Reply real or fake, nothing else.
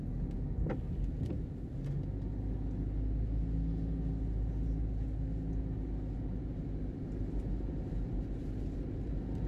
real